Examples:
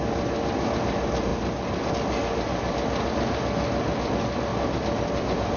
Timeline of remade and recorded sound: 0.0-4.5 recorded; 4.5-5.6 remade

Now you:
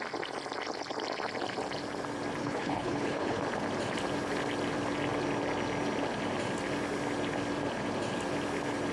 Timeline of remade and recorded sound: 0.0-2.4 recorded; 2.4-3.4 remade; 3.4-8.9 recorded

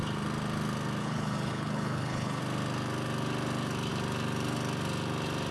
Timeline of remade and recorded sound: 0.0-1.0 recorded; 1.0-2.4 remade; 2.4-5.5 recorded

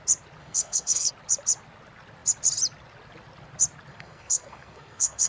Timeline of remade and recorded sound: 0.0-0.4 recorded; 0.4-1.1 remade; 1.1-3.9 recorded; 3.9-5.3 remade

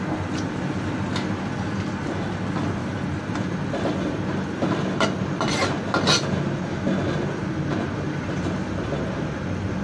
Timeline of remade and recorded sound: 0.0-9.8 recorded

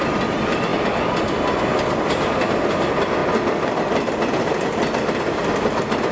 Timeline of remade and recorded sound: 0.0-6.1 recorded

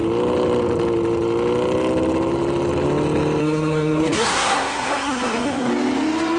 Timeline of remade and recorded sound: 0.0-3.4 recorded; 3.4-5.7 remade; 5.7-6.4 recorded

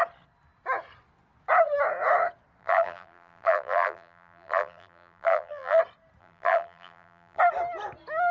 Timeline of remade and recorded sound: 0.0-2.6 recorded; 2.6-5.8 remade; 5.8-6.2 recorded; 6.2-7.4 remade; 7.4-8.3 recorded